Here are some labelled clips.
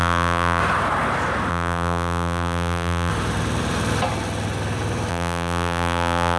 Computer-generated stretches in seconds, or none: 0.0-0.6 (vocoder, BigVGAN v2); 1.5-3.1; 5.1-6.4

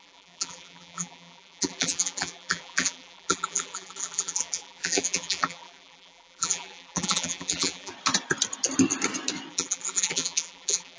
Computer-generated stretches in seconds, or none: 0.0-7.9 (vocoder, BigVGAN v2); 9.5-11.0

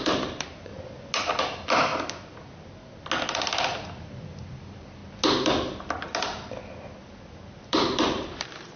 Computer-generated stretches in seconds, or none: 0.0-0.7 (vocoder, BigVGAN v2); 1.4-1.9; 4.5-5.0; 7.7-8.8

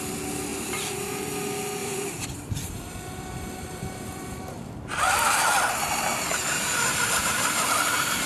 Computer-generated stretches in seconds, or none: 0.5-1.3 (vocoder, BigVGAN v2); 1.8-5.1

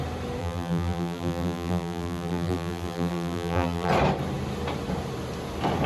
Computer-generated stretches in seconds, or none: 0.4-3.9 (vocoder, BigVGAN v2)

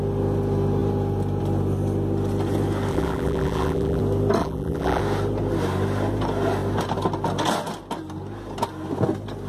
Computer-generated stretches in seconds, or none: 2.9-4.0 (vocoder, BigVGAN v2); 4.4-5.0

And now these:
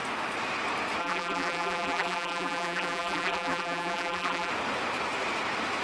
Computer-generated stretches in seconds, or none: 1.0-4.5 (vocoder, BigVGAN v2)